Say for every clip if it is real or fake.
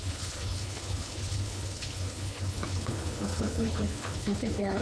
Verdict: fake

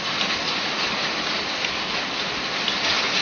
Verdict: real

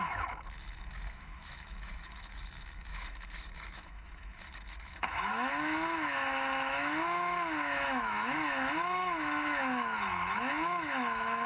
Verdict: fake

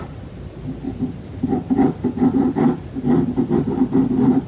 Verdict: real